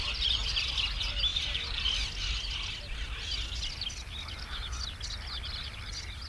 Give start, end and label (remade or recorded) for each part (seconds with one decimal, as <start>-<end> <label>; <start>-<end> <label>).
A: 0.0-6.3 recorded

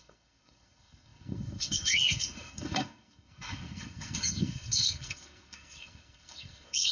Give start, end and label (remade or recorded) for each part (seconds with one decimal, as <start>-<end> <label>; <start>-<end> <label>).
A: 0.0-6.9 remade

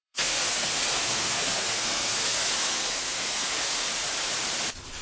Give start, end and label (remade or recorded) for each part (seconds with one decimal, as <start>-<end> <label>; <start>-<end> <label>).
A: 0.0-3.9 remade; 3.9-5.0 recorded

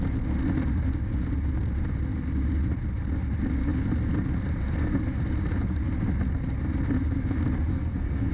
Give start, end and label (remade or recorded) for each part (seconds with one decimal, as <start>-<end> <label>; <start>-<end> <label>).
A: 0.0-7.7 recorded; 7.7-8.3 remade